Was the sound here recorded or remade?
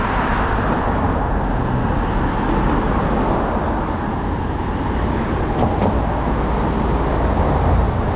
recorded